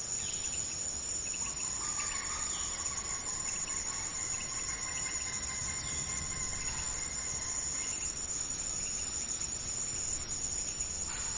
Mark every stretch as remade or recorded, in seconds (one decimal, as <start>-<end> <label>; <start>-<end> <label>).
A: 0.0-11.4 recorded